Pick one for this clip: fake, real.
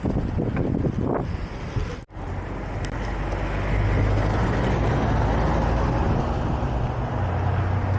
real